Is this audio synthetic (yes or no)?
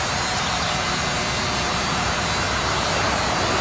yes